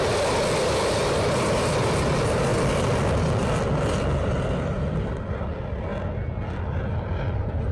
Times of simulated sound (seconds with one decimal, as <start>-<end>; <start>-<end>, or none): 0.0-5.9; 6.9-7.7